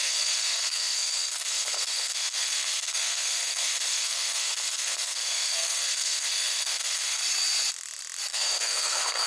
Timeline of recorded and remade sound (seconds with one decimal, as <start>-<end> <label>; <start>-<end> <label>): 0.0-7.2 remade; 7.2-8.3 recorded; 8.3-9.3 remade